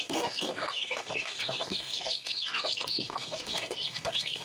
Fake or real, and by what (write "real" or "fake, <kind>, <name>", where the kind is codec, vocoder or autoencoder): fake, codec, DAC